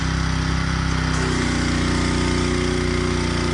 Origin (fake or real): real